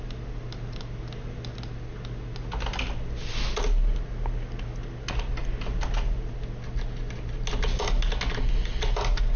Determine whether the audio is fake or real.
real